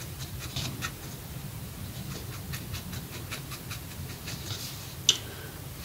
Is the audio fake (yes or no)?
no